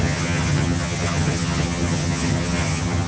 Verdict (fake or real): fake